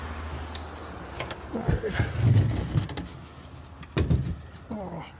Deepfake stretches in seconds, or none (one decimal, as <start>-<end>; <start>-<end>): none